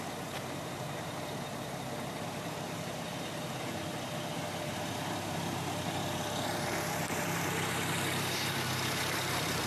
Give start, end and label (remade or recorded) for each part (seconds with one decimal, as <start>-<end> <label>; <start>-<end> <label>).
0.0-3.9 remade; 3.9-4.7 recorded; 4.7-9.7 remade